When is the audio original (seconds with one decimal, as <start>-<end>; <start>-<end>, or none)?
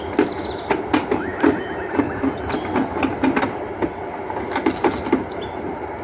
0.0-6.0